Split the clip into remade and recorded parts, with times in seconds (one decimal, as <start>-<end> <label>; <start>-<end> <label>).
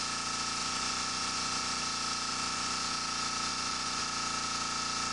0.0-0.6 recorded; 0.6-1.8 remade; 1.8-2.3 recorded; 2.3-2.9 remade; 2.9-3.5 recorded; 3.5-4.0 remade; 4.0-5.1 recorded